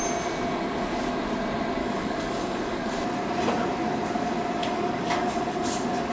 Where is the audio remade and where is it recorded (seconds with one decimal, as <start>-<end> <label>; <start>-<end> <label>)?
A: 0.0-1.8 recorded; 1.8-2.9 remade; 2.9-4.6 recorded; 4.6-6.1 remade